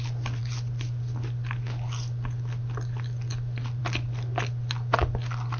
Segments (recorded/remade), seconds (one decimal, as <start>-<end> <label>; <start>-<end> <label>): 0.0-5.6 recorded